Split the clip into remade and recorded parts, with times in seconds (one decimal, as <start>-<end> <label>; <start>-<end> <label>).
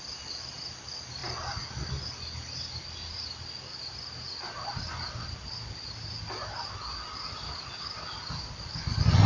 0.0-9.3 recorded